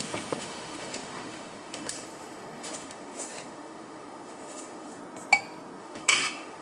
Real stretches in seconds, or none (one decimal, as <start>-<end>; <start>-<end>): 5.0-5.8